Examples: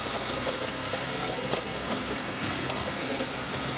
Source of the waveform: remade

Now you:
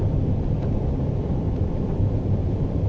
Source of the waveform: recorded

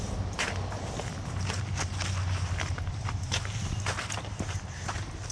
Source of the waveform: recorded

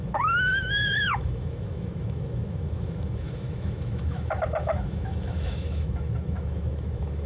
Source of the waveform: remade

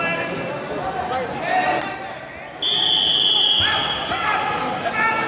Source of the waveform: recorded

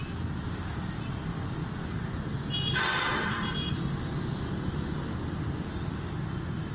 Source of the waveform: recorded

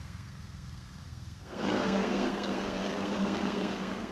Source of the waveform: remade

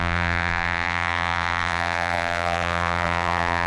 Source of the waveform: remade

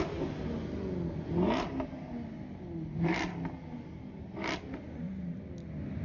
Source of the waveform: recorded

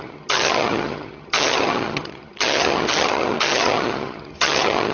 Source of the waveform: remade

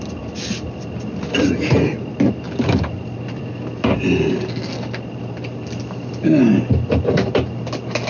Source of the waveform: recorded